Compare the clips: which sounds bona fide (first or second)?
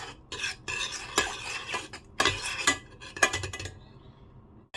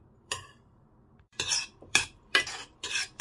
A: first